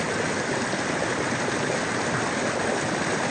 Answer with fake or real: real